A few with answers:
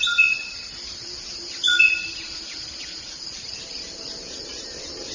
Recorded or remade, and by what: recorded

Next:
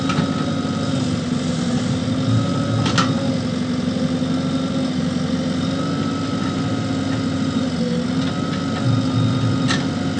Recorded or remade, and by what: recorded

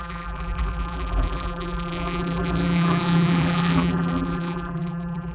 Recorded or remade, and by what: remade, vocoder, BigVGAN v2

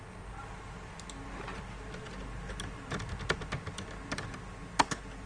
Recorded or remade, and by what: recorded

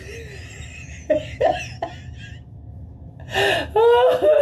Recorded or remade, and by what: recorded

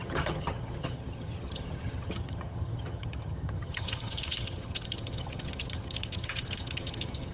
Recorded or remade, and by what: remade, vocoder, HiFi-GAN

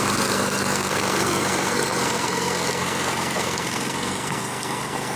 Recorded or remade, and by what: remade, codec, SNAC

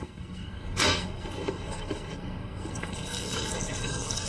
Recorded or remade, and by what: remade, codec, SNAC